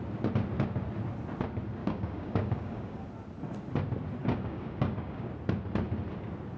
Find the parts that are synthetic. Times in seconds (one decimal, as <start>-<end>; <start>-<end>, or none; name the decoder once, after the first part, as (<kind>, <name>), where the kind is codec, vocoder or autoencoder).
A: 1.8-3.1 (codec, DAC); 4.2-5.3